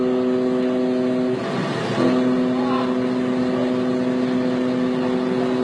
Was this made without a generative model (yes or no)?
yes